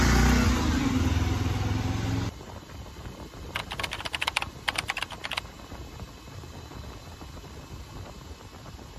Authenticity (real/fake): real